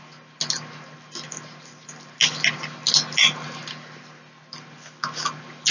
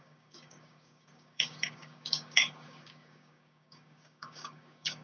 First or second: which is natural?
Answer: first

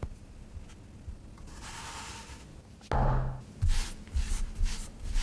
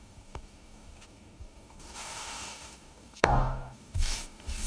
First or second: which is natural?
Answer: first